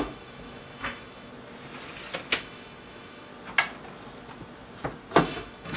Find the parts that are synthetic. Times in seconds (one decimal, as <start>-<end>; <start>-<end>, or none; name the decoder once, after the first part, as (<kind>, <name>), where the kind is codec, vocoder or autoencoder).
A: 0.0-1.3 (autoencoder, DAC-VAE); 2.4-3.3; 5.2-5.8